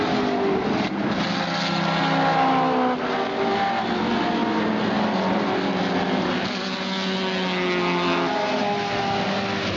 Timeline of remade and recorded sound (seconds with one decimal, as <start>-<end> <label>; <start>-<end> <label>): 0.0-9.8 recorded